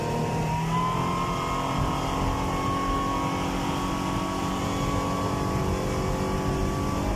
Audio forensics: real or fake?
real